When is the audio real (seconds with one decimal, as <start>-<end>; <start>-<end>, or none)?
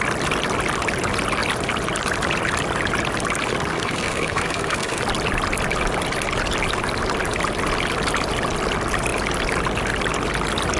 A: 0.0-3.7; 5.0-10.8